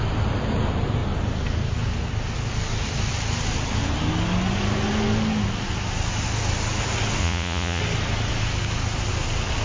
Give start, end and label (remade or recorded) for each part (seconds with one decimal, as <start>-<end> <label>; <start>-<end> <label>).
0.0-7.2 recorded; 7.2-7.8 remade; 7.8-9.6 recorded